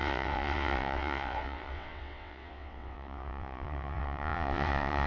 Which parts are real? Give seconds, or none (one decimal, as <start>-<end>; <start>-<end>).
none